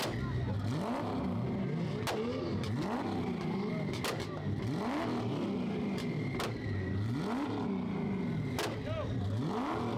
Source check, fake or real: real